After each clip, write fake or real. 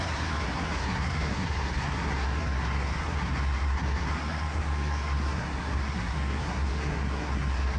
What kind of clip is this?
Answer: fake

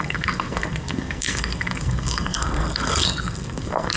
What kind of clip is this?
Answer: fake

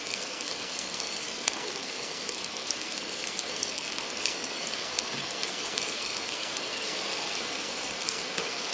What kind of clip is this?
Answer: fake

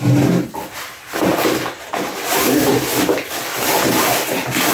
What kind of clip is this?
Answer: real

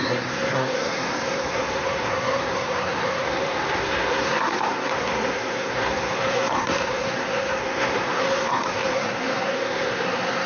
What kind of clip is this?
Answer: fake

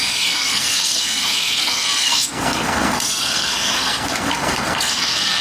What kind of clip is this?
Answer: fake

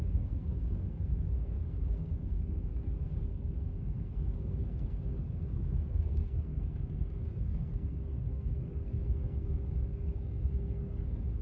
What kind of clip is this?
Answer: fake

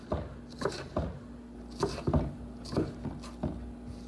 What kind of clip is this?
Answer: real